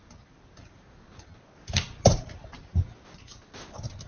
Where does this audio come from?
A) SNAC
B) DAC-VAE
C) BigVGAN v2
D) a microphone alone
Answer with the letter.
D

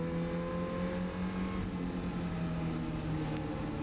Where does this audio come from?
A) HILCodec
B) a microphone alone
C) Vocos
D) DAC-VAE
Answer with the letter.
B